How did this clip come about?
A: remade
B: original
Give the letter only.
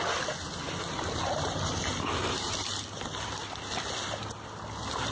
B